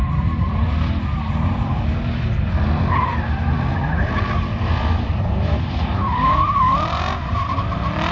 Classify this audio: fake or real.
fake